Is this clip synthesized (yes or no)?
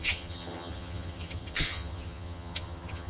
yes